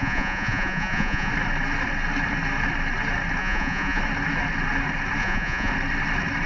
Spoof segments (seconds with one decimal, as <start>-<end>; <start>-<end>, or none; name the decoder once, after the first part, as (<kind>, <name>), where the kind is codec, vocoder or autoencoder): 0.0-1.3 (vocoder, Vocos); 3.4-4.0; 5.2-5.7